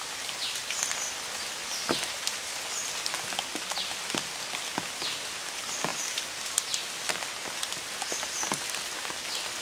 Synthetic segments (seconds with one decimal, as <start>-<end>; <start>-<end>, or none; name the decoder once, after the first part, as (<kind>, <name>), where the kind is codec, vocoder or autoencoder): none